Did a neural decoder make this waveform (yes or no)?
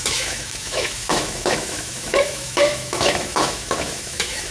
yes